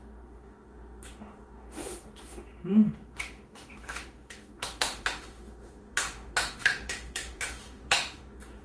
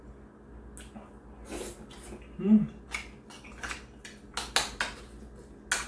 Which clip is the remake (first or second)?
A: first